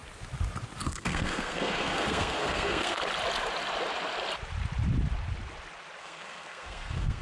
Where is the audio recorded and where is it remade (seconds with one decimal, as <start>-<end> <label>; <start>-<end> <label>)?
0.0-0.8 recorded; 0.8-3.0 remade; 3.0-6.0 recorded; 6.0-7.2 remade